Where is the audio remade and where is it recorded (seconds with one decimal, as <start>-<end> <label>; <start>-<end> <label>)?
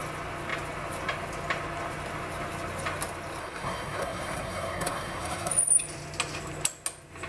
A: 0.0-3.4 recorded; 3.4-5.5 remade; 5.5-7.3 recorded